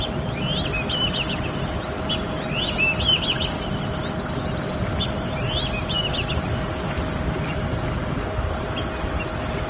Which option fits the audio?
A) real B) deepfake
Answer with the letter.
A